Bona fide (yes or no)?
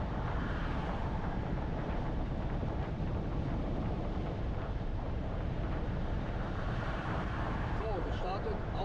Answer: no